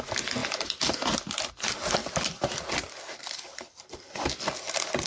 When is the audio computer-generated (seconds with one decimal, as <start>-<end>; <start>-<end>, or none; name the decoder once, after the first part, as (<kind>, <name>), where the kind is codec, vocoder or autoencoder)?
none